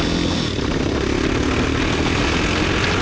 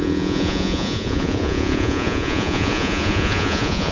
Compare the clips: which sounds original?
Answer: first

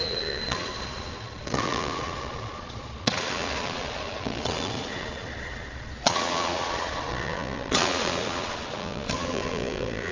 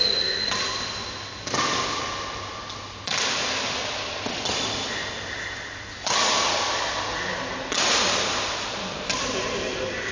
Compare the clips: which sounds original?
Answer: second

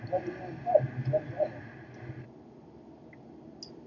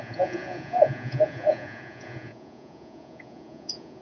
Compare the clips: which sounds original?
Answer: first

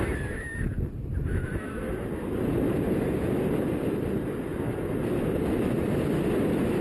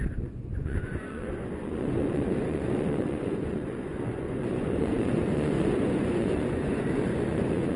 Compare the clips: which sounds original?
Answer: first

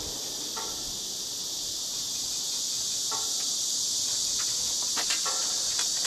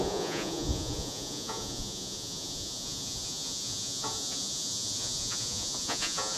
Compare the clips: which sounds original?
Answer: first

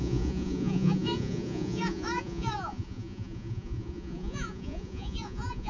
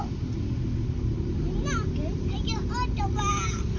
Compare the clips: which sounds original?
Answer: second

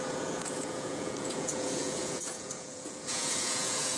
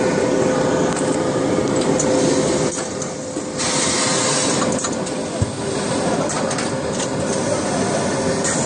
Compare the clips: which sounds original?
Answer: second